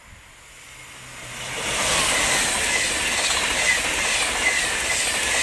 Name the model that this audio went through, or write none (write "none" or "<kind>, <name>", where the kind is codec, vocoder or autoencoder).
none